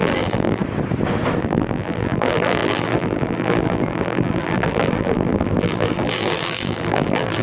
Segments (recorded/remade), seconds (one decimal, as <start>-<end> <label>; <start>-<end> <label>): 0.0-0.6 remade; 0.6-1.4 recorded; 1.4-7.4 remade